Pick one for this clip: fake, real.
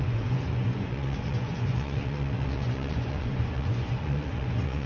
fake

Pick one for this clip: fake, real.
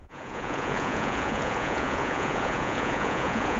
fake